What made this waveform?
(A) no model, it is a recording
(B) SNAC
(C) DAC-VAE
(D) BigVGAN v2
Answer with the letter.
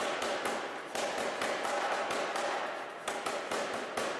A